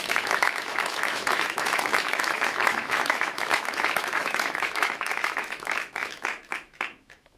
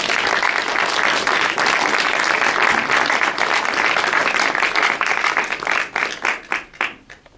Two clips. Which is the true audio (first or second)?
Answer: second